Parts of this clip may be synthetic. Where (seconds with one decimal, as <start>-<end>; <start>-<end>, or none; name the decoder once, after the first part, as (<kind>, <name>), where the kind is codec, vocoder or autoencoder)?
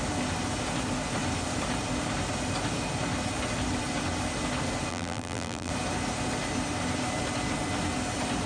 4.9-5.7 (vocoder, BigVGAN v2)